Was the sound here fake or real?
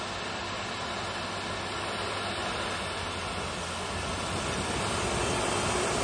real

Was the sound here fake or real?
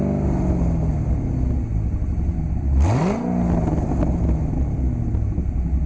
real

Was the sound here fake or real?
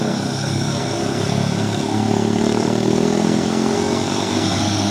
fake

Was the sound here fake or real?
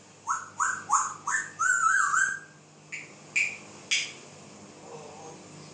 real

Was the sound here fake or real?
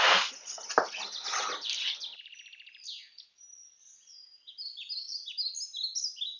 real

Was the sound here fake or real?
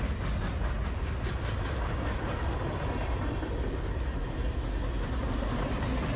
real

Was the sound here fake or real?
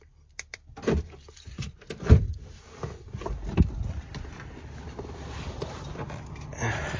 fake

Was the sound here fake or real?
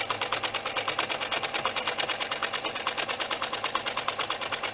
real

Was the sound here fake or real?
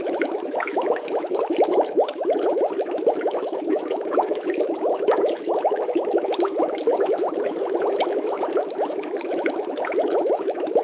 fake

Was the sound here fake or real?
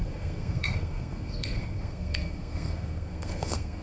fake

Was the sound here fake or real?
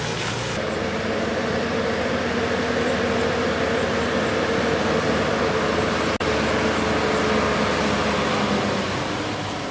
real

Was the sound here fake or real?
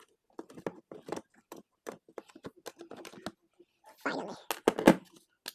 real